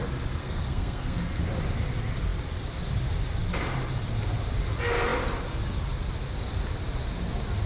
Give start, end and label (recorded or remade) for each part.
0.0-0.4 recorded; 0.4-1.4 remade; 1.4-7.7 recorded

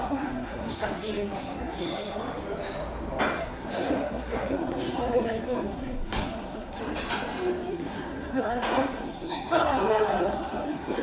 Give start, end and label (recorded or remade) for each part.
0.0-2.2 remade; 2.2-3.4 recorded; 3.4-6.8 remade; 6.8-7.7 recorded; 7.7-11.0 remade